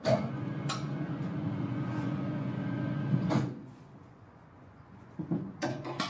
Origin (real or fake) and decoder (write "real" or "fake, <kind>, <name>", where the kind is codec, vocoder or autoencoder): fake, vocoder, Vocos